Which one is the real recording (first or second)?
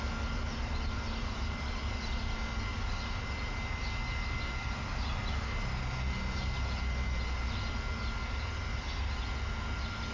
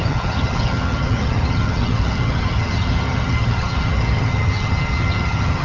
first